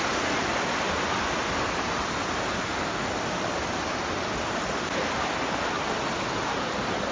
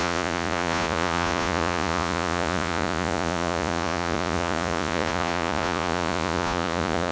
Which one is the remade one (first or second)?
second